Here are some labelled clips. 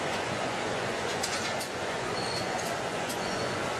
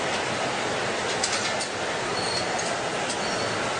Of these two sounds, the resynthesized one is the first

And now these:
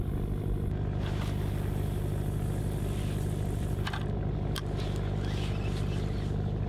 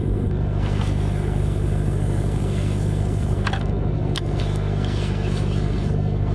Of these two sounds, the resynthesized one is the second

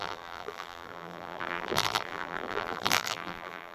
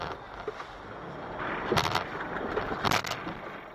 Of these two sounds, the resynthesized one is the first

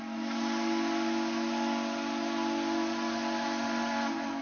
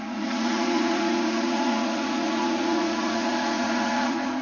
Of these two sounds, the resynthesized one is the second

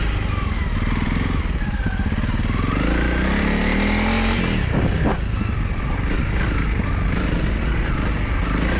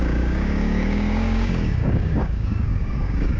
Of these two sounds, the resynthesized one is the second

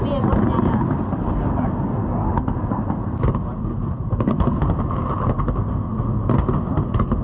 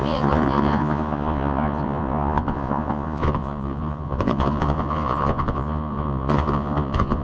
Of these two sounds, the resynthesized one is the second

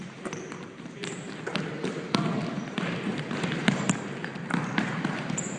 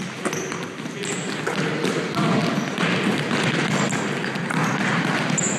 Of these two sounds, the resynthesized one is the first